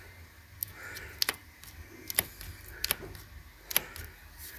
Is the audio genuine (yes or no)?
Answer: yes